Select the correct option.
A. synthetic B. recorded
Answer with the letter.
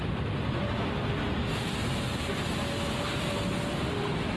B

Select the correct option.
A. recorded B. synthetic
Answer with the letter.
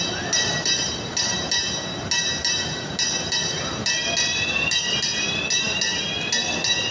A